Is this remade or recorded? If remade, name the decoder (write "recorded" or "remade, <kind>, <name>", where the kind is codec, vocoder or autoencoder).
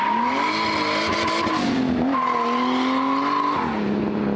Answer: recorded